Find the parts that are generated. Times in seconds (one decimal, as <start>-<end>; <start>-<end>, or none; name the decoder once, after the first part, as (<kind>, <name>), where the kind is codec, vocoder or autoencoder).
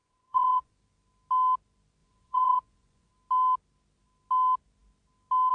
0.0-0.7 (vocoder, Vocos); 2.0-3.1